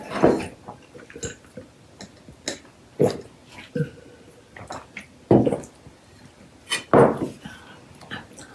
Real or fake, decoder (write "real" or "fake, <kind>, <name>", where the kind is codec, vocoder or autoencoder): real